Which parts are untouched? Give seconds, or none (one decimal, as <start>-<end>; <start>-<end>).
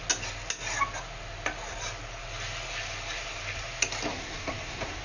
0.0-4.1